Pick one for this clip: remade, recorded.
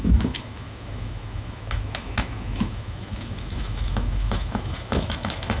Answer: remade